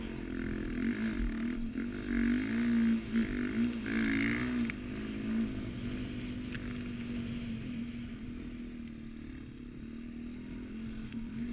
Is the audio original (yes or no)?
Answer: yes